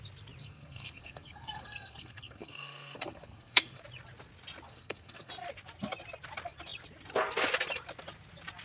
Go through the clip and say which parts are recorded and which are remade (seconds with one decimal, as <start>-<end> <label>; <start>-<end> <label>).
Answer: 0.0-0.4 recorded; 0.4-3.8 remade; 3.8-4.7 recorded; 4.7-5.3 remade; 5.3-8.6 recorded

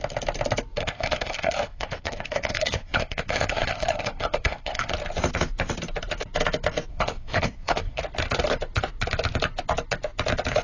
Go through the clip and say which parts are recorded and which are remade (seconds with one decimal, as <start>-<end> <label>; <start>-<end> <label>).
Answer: 0.0-0.8 recorded; 0.8-4.9 remade; 4.9-6.9 recorded; 6.9-8.0 remade; 8.0-10.6 recorded

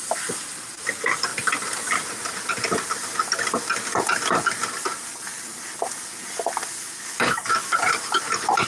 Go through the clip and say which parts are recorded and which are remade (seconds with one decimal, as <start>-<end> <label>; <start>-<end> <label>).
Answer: 0.0-8.7 recorded

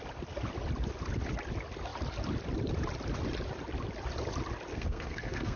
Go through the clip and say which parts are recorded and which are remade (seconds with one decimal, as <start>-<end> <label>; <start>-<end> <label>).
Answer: 0.0-4.7 recorded; 4.7-5.6 remade

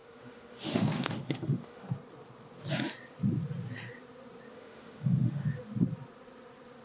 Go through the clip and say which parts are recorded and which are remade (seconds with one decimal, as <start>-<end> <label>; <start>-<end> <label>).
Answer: 0.0-1.9 remade; 1.9-4.5 recorded; 4.5-5.6 remade; 5.6-6.8 recorded

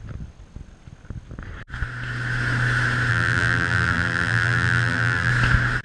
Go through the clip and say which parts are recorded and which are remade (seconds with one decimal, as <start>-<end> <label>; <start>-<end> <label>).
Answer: 0.0-3.1 recorded; 3.1-5.3 remade; 5.3-5.8 recorded

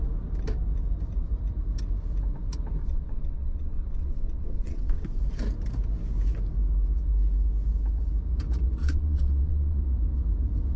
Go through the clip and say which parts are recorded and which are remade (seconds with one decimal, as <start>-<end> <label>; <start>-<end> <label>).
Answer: 0.0-2.8 recorded; 2.8-5.2 remade; 5.2-8.8 recorded; 8.8-9.8 remade; 9.8-10.8 recorded